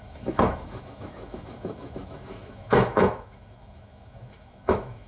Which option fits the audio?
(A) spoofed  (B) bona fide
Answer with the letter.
A